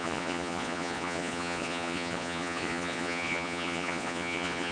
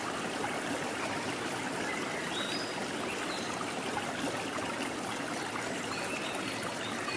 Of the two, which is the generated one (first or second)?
first